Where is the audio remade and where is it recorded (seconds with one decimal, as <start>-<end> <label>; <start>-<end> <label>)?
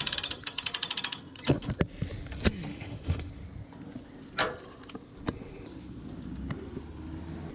0.0-2.7 recorded; 2.7-3.3 remade; 3.3-7.5 recorded